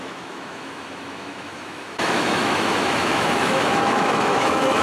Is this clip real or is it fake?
fake